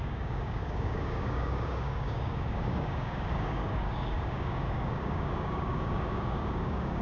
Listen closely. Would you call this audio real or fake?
fake